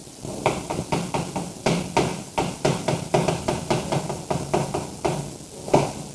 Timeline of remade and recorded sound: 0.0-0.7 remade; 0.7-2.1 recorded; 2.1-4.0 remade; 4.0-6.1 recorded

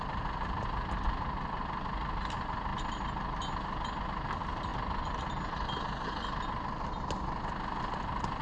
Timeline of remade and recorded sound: 0.0-8.4 recorded

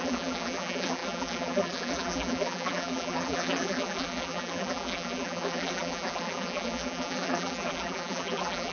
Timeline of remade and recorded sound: 0.0-8.7 remade

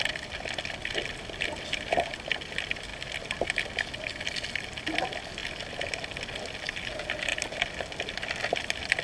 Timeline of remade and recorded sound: 0.0-9.0 recorded

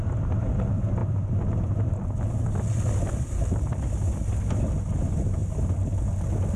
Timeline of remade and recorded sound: 0.0-5.4 recorded; 5.4-6.0 remade; 6.0-6.6 recorded

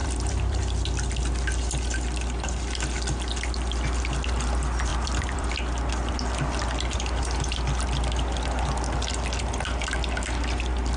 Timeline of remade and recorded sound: 0.0-0.6 remade; 0.6-4.9 recorded; 4.9-5.5 remade; 5.5-11.0 recorded

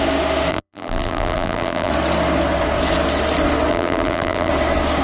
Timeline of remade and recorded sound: 0.0-0.5 recorded; 0.5-1.9 remade; 1.9-3.7 recorded; 3.7-4.5 remade; 4.5-5.0 recorded

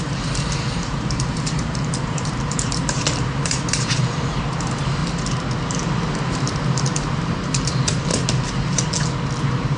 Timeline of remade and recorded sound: 0.0-5.0 remade; 5.0-6.2 recorded; 6.2-8.1 remade; 8.1-9.4 recorded; 9.4-9.8 remade